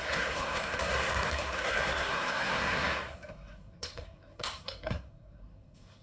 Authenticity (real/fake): fake